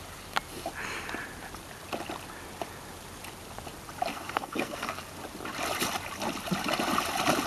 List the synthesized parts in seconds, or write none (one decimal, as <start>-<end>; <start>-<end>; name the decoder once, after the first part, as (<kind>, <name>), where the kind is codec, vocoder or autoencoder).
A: 4.1-5.0 (codec, SNAC)